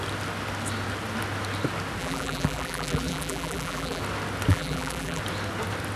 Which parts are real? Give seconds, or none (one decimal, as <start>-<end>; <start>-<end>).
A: 0.0-2.0; 4.0-4.5; 5.2-6.0